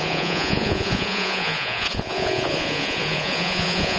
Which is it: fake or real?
fake